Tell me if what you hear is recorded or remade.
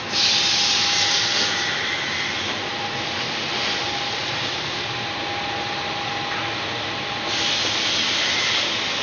recorded